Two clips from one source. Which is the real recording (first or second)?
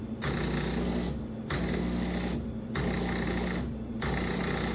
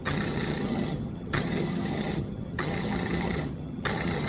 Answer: first